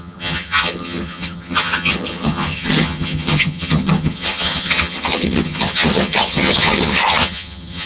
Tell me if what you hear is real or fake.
fake